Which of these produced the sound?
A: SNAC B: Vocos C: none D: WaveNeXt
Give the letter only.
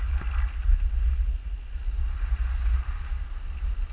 C